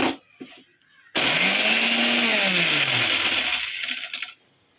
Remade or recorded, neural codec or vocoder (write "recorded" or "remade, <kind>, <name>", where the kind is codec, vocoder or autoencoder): recorded